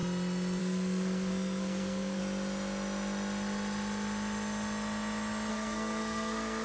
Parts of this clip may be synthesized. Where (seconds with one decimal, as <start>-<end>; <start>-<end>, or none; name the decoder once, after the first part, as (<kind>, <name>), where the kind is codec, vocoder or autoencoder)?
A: 0.6-2.2 (codec, SNAC); 5.5-6.6